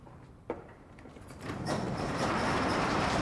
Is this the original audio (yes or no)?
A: no